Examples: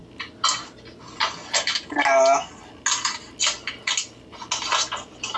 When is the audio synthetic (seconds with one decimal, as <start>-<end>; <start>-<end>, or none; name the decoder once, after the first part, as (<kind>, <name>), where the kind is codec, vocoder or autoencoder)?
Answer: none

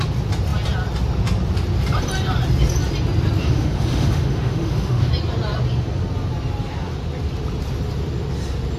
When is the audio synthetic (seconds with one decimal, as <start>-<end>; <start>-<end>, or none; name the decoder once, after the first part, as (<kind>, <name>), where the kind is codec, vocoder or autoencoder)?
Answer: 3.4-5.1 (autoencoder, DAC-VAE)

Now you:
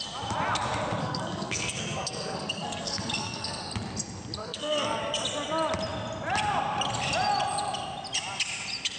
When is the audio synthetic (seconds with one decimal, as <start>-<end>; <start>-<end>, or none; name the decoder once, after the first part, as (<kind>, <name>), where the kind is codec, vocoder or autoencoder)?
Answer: 1.0-3.6 (codec, SNAC); 4.4-5.0

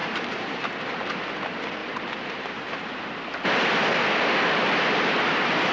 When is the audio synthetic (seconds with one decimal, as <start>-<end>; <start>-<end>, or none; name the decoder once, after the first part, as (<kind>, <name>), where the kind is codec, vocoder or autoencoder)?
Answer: 0.0-0.7 (vocoder, BigVGAN v2); 1.8-2.5

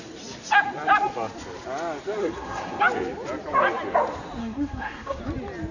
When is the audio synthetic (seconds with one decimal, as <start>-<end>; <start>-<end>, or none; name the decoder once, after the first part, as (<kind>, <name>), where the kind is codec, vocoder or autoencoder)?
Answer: 2.2-2.8 (codec, SNAC); 4.4-5.2

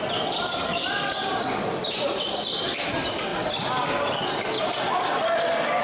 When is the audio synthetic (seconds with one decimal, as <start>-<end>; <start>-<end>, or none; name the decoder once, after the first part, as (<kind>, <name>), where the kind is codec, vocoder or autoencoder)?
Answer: none

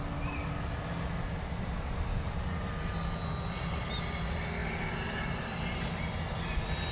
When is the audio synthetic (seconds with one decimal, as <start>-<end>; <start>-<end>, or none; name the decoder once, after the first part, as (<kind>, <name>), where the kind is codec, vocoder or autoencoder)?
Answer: 4.6-5.9 (vocoder, BigVGAN v2)

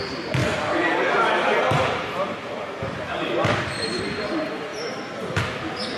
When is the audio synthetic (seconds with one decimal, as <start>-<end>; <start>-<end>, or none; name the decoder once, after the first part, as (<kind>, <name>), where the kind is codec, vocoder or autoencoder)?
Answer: 0.4-4.0 (vocoder, BigVGAN v2); 4.7-5.4